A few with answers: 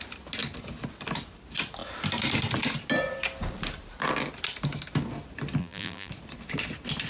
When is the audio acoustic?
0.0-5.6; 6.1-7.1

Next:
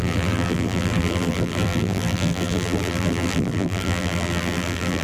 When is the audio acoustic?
none

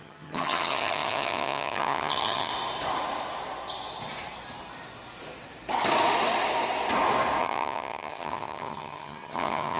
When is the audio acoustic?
2.5-7.4

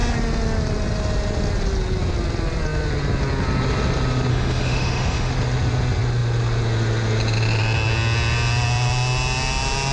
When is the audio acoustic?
0.0-4.3; 5.3-9.9

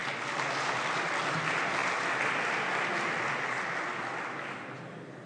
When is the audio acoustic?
0.0-5.3

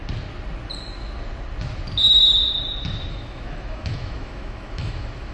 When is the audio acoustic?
0.0-3.1

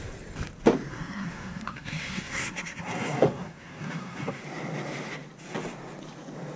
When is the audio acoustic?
0.0-0.9; 4.4-6.6

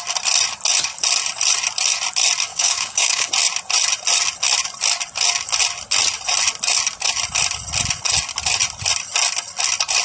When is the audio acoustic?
0.0-2.5; 3.3-10.0